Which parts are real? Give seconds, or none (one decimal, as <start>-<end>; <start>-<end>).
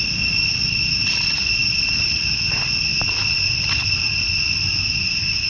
0.0-1.6; 2.2-2.9